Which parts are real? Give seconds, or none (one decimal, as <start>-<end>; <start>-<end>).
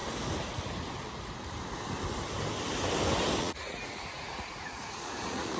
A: 0.0-3.4